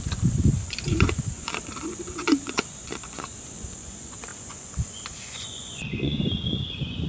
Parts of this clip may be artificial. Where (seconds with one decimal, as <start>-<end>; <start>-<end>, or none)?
0.0-7.1